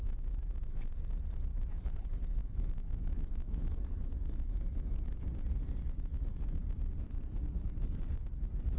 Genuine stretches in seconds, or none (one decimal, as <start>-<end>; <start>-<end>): 0.0-1.5; 2.0-2.4; 5.2-8.8